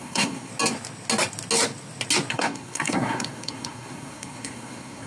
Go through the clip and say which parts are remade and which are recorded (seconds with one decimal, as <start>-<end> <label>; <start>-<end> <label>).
0.0-0.5 remade; 0.5-2.3 recorded; 2.3-5.1 remade